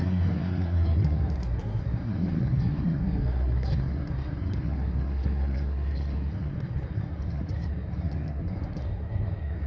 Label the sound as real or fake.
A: fake